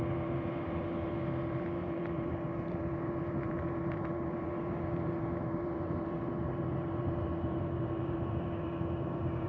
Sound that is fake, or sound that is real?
fake